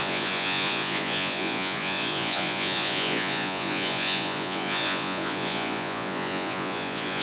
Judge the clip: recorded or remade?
remade